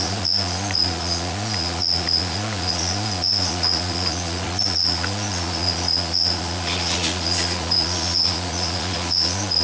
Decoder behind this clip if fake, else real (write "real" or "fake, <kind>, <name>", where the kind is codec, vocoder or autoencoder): fake, vocoder, Vocos